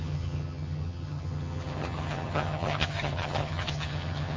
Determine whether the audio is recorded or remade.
remade